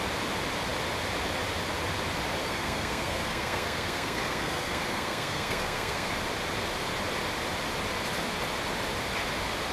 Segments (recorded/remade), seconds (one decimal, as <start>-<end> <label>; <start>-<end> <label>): 0.0-2.4 recorded; 2.4-6.1 remade; 6.1-9.7 recorded